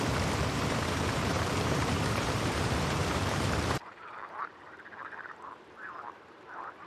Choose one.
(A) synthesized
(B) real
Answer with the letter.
A